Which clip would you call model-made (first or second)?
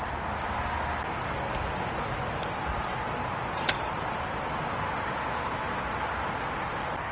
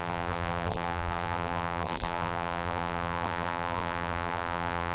second